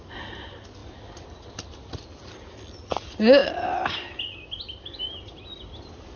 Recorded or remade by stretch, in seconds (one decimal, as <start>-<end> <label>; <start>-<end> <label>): 0.0-6.2 recorded